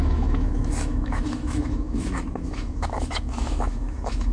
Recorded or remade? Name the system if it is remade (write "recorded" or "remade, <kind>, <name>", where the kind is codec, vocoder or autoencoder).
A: remade, autoencoder, DAC-VAE